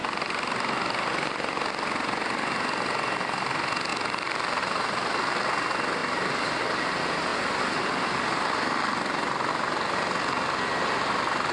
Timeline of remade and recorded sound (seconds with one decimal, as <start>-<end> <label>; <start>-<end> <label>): 0.0-6.0 recorded; 6.0-6.6 remade; 6.6-7.3 recorded; 7.3-9.5 remade; 9.5-11.5 recorded